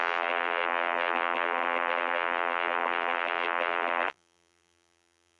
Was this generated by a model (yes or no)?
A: yes